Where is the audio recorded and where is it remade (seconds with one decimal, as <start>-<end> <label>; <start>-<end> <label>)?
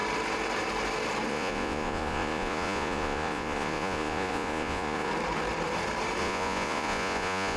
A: 0.0-1.3 recorded; 1.3-5.1 remade; 5.1-6.2 recorded; 6.2-7.6 remade